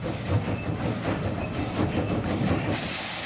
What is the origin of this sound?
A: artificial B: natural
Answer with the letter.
B